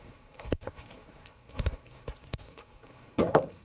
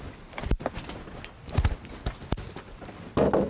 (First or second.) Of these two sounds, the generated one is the first